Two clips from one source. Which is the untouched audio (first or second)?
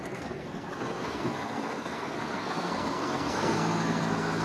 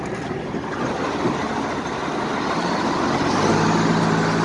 second